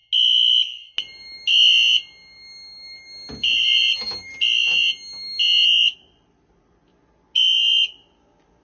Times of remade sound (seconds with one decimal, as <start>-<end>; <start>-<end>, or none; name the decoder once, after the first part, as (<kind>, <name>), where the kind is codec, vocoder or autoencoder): none

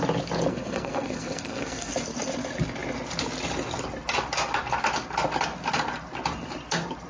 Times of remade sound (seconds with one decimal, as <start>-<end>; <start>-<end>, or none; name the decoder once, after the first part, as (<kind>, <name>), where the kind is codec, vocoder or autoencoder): 0.5-1.9 (codec, SNAC)

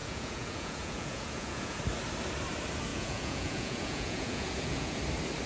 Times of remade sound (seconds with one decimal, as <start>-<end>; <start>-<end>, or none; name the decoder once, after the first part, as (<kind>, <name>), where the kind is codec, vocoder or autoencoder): 0.0-1.8 (vocoder, Vocos); 2.9-5.0